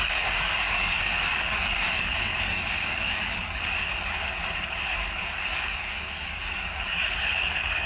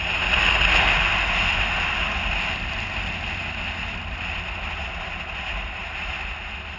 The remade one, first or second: first